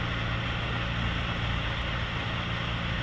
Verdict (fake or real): real